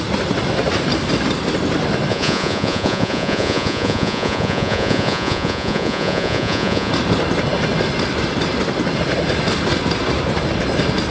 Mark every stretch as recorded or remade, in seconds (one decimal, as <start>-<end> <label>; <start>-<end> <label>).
0.0-2.1 recorded; 2.1-6.9 remade; 6.9-11.1 recorded